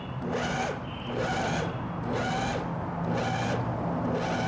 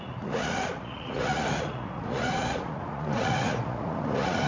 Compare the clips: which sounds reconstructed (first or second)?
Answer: second